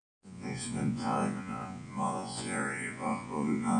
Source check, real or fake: fake